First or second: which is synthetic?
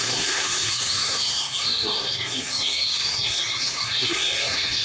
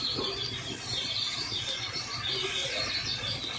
first